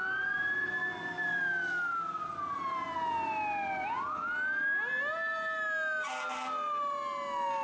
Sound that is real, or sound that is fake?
real